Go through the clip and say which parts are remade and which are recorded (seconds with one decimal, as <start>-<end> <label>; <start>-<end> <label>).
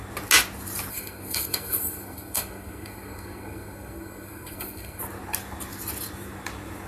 0.0-0.9 recorded; 0.9-5.0 remade; 5.0-6.9 recorded